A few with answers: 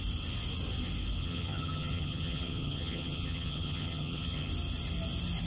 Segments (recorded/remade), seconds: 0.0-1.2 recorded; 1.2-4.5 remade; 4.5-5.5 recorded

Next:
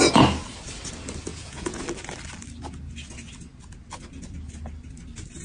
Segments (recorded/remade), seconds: 0.0-1.3 recorded; 1.3-1.8 remade; 1.8-5.4 recorded

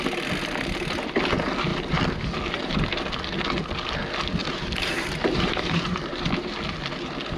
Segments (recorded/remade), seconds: 0.0-4.4 recorded; 4.4-6.5 remade; 6.5-7.4 recorded

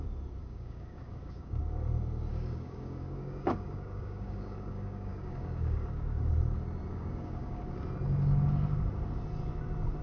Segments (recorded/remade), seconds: 0.0-0.4 recorded; 0.4-1.6 remade; 1.6-2.3 recorded; 2.3-6.3 remade; 6.3-6.9 recorded; 6.9-7.6 remade; 7.6-10.0 recorded

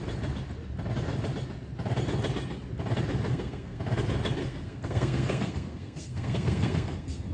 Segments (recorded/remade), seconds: 0.0-3.3 recorded; 3.3-3.8 remade; 3.8-4.4 recorded; 4.4-7.3 remade

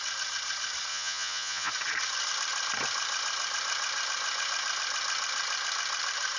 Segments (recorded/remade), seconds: 0.0-0.9 recorded; 0.9-1.7 remade; 1.7-6.4 recorded

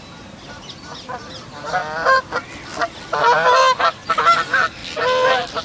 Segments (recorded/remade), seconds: 0.0-5.6 recorded

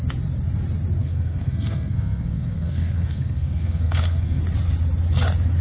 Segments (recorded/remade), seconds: 0.0-1.0 recorded; 1.0-4.4 remade; 4.4-5.6 recorded